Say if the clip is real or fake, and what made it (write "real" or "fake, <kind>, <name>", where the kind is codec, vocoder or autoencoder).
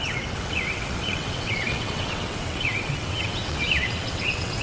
fake, vocoder, WaveNeXt